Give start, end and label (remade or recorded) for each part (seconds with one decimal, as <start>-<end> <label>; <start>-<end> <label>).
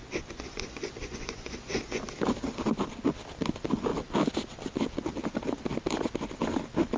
0.0-2.0 remade; 2.0-7.0 recorded